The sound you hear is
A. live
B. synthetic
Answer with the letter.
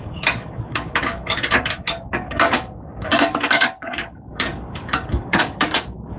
B